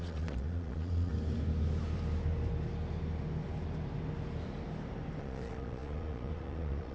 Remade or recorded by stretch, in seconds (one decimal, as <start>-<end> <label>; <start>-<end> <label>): 0.0-1.1 remade; 1.1-5.2 recorded; 5.2-6.9 remade